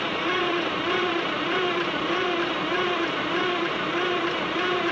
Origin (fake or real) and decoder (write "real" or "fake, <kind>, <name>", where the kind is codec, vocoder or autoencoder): fake, vocoder, BigVGAN v2